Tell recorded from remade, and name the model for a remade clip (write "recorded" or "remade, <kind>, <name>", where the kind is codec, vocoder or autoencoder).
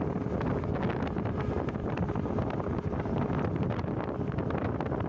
recorded